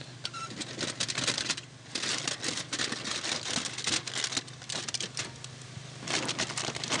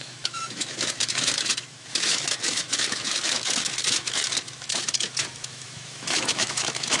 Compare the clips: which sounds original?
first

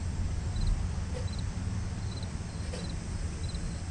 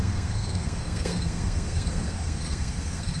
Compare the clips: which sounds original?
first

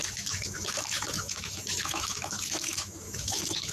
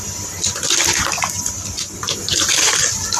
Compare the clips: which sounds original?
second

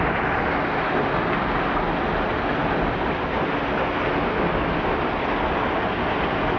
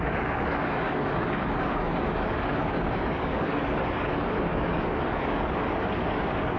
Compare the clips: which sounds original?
first